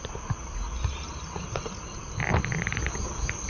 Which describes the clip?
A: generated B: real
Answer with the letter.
B